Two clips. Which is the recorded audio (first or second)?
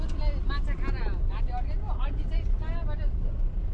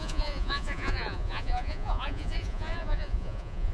first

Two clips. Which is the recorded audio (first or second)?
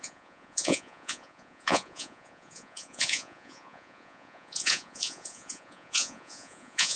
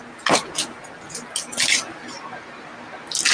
second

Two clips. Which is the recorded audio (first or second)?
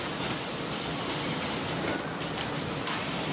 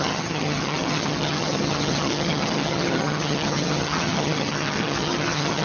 first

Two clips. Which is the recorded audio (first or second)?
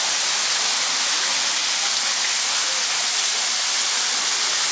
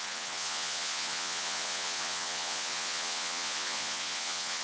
first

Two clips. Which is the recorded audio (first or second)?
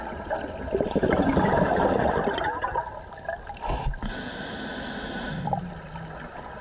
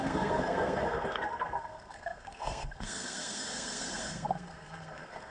first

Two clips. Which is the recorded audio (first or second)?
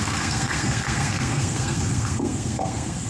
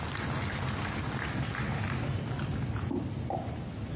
second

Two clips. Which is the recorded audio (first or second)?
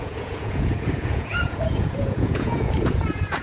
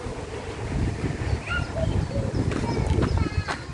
second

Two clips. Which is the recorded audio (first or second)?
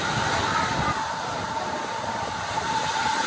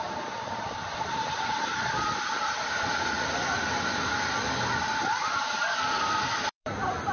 first